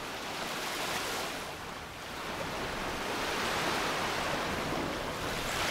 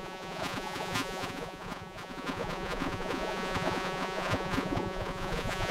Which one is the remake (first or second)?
second